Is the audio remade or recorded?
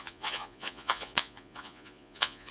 remade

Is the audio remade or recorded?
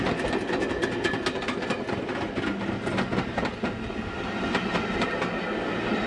recorded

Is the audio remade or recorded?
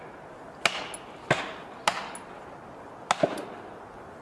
recorded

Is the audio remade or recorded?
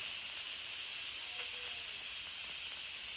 recorded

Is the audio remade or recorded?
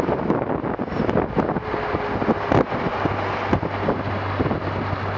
recorded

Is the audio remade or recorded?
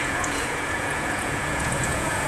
remade